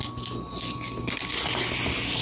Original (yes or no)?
yes